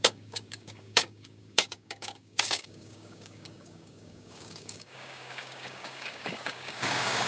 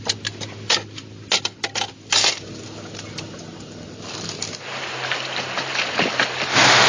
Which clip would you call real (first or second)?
second